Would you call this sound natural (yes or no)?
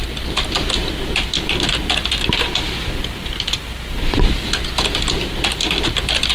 yes